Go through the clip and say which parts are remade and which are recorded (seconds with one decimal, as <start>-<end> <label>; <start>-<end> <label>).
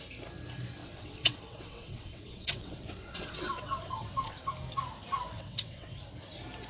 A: 0.0-0.8 recorded; 0.8-4.5 remade; 4.5-5.3 recorded; 5.3-6.0 remade; 6.0-6.7 recorded